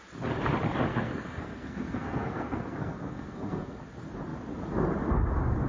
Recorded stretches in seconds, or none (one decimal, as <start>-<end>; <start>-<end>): 0.0-0.9; 3.8-5.7